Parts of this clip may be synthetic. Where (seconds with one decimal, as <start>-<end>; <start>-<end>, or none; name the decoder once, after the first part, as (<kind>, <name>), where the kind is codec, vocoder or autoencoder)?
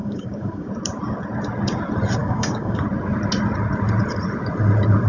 0.0-0.7 (codec, DAC); 2.2-2.8